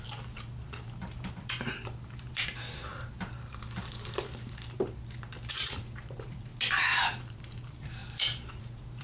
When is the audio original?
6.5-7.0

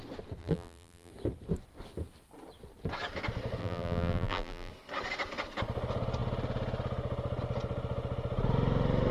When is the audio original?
0.0-0.4; 1.1-3.6; 4.7-9.1

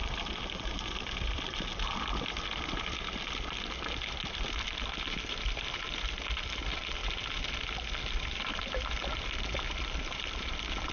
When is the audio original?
7.0-8.2

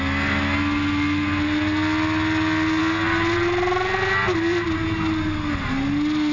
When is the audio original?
0.0-6.3

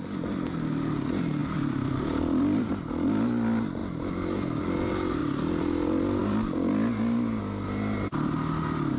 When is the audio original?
0.0-1.4; 2.7-9.0

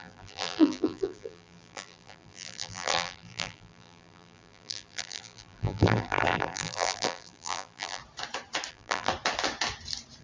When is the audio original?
8.0-8.7; 9.1-10.2

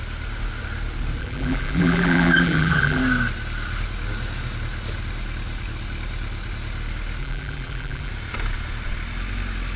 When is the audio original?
0.0-1.2; 3.0-7.2; 8.1-9.8